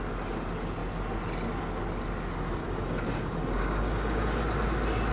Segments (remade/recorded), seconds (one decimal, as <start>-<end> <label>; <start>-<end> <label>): 0.0-2.6 recorded; 2.6-4.3 remade; 4.3-5.1 recorded